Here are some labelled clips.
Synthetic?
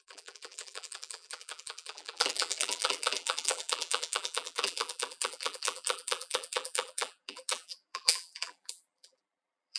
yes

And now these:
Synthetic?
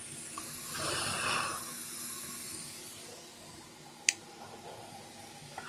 yes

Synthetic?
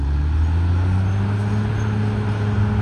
no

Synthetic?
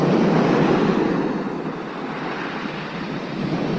no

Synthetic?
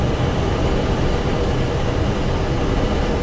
no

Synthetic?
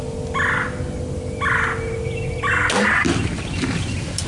no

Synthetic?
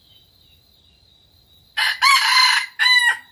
no